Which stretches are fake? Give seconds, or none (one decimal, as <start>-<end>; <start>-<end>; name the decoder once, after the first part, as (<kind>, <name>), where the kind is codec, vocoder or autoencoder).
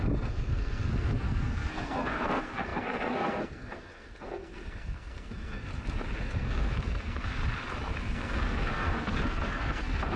0.0-5.7 (codec, SNAC); 6.2-7.4; 8.0-10.2